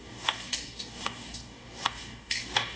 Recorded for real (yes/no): no